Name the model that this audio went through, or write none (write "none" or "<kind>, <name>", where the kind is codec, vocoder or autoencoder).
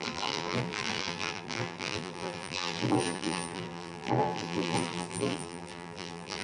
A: vocoder, BigVGAN v2